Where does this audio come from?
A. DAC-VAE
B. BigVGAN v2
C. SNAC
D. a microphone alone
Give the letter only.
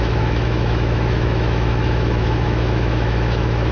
A